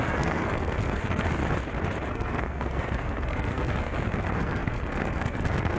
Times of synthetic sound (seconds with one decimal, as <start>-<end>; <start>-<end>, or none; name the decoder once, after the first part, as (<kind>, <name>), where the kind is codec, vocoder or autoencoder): 0.0-1.4 (codec, SNAC); 2.1-5.8